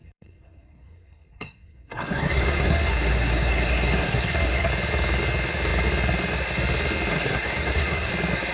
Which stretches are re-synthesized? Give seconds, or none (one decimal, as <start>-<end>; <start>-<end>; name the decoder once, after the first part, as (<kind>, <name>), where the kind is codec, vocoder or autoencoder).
0.0-4.7 (codec, SNAC); 7.1-8.1